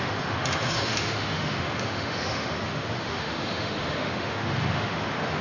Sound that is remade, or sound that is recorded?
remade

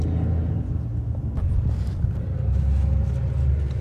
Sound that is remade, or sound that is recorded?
recorded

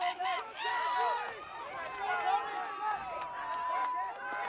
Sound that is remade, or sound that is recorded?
recorded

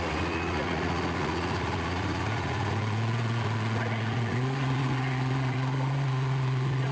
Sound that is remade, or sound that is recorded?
remade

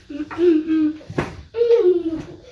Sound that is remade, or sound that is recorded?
remade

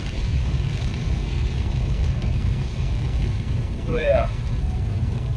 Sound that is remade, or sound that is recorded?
remade